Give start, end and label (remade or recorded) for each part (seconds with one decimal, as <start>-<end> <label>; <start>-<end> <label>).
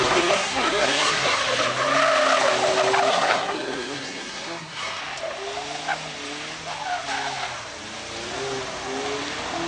0.0-1.4 remade; 1.4-3.1 recorded; 3.1-5.0 remade; 5.0-9.7 recorded